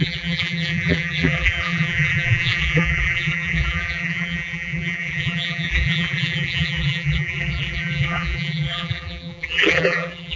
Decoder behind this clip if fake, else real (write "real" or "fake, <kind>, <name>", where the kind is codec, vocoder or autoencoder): fake, vocoder, BigVGAN v2